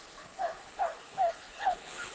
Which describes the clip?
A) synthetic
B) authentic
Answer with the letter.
A